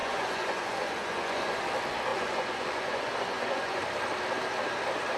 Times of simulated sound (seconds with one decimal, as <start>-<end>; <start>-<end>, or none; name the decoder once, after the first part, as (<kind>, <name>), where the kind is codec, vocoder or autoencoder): 0.0-1.6 (vocoder, Vocos); 2.1-3.8